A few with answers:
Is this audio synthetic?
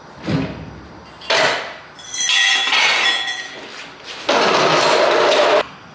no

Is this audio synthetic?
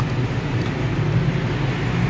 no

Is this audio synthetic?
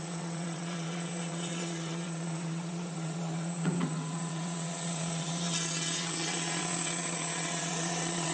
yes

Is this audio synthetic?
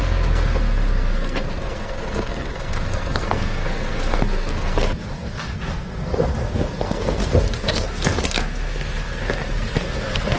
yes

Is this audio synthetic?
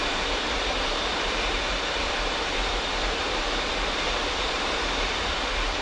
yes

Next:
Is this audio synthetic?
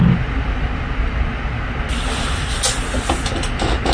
no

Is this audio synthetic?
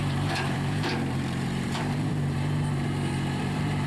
yes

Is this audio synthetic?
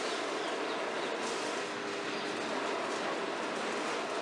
no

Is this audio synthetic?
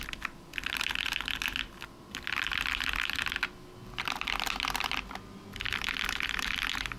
no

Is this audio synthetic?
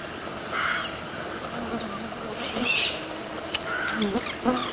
no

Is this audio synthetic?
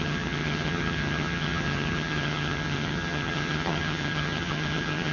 yes